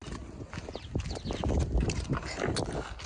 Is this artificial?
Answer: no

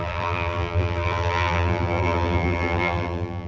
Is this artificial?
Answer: yes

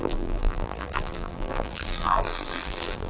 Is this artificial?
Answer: yes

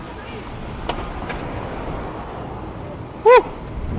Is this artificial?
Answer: no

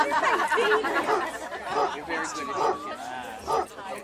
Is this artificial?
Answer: no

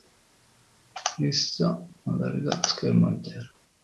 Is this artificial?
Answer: no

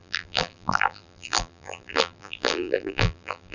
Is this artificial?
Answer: yes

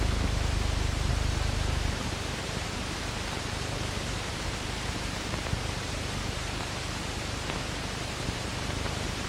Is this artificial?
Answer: yes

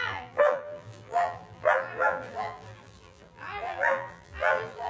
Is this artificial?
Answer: yes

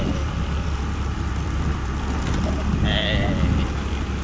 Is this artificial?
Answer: yes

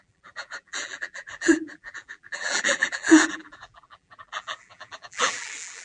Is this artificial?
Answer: yes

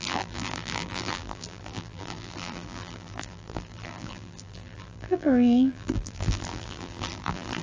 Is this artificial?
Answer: yes